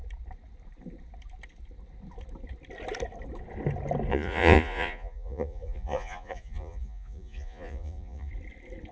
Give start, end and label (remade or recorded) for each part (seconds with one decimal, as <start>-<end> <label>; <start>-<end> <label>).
0.0-4.1 recorded; 4.1-8.3 remade; 8.3-8.9 recorded

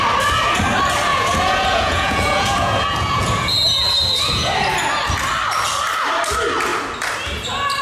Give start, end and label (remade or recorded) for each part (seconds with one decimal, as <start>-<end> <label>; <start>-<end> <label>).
0.0-1.1 recorded; 1.1-4.5 remade; 4.5-7.8 recorded

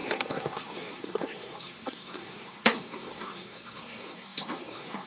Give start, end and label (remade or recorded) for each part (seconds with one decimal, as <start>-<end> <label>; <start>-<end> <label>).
0.0-5.1 remade

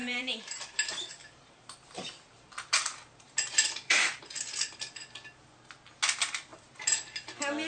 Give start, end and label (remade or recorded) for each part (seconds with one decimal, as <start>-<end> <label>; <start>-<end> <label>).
0.0-4.2 remade; 4.2-6.5 recorded; 6.5-7.1 remade; 7.1-7.7 recorded

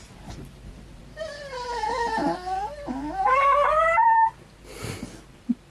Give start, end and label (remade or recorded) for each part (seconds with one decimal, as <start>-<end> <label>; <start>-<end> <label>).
0.0-5.7 recorded

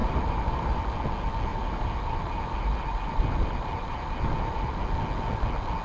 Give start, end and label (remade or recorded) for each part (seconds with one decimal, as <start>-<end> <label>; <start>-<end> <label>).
0.0-0.8 remade; 0.8-1.5 recorded; 1.5-4.8 remade; 4.8-5.8 recorded

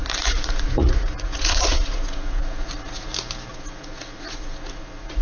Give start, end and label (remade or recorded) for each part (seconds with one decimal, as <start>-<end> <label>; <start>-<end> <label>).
0.0-3.1 remade; 3.1-3.5 recorded; 3.5-5.2 remade